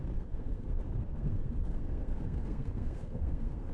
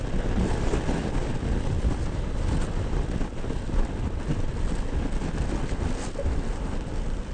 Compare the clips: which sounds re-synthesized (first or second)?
first